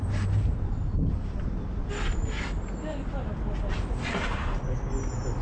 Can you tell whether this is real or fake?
real